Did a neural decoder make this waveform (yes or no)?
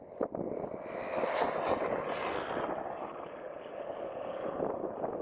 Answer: no